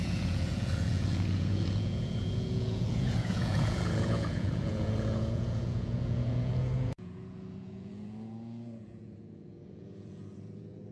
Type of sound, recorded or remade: remade